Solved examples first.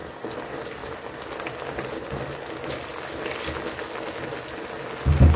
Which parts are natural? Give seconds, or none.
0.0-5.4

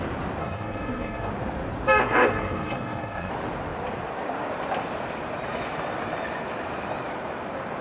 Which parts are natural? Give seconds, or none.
0.0-0.4; 1.3-2.0; 3.3-7.8

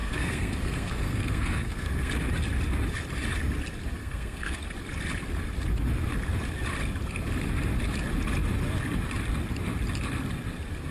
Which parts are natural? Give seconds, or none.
2.1-4.0; 4.6-10.9

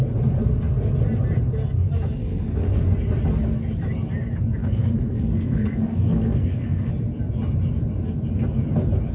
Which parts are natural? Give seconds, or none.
0.0-2.2; 2.8-4.6; 6.9-9.1